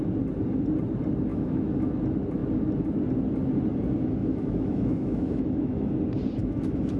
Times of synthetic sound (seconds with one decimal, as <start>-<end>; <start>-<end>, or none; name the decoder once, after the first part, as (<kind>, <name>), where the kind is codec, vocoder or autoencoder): 1.3-1.9 (autoencoder, DAC-VAE); 4.2-5.9; 6.4-7.0